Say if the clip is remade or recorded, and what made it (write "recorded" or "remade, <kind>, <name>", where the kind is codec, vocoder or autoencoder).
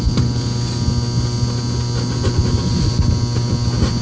recorded